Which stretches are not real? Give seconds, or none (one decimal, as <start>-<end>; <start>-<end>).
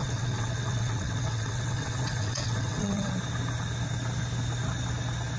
0.0-3.1